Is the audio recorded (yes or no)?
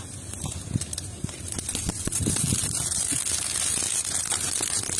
yes